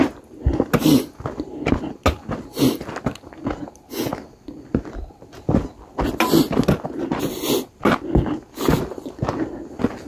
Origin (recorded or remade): recorded